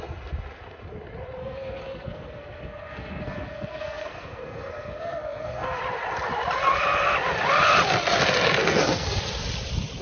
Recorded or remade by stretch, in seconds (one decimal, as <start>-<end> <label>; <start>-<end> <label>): 0.0-1.4 recorded; 1.4-5.8 remade; 5.8-8.6 recorded; 8.6-9.2 remade; 9.2-10.0 recorded